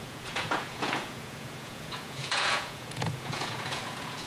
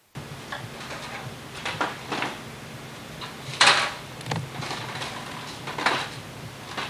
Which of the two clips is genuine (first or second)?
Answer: second